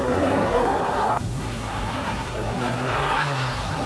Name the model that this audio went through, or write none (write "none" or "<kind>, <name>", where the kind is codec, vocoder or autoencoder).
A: codec, SNAC